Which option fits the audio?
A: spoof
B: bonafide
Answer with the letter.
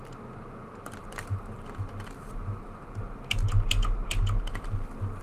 B